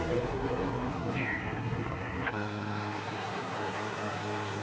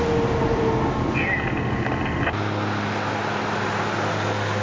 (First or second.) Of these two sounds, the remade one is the first